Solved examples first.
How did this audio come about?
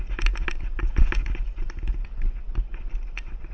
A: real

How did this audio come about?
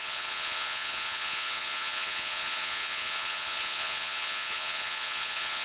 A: fake